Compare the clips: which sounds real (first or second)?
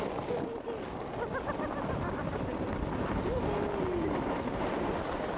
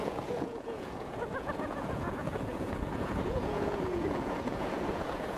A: first